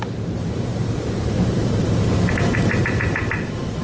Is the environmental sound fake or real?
fake